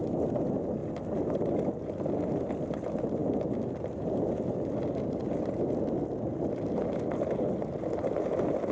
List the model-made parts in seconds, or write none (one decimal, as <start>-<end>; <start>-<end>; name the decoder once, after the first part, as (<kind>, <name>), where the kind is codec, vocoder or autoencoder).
none